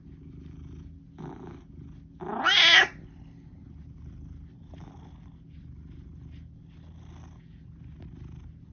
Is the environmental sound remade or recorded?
recorded